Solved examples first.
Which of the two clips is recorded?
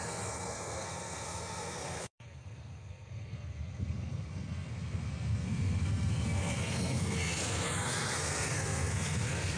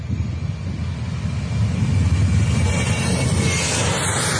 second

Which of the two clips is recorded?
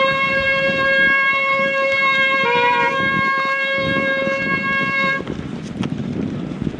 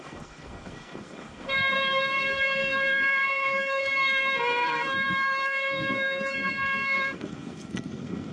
first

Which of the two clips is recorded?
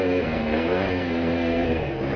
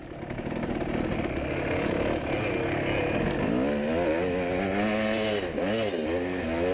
second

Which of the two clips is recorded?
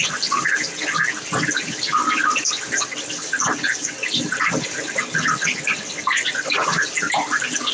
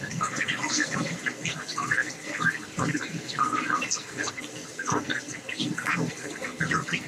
first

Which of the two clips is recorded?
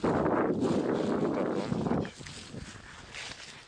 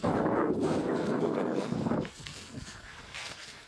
first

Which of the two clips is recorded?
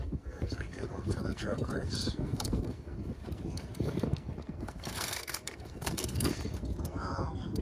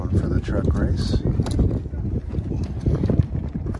second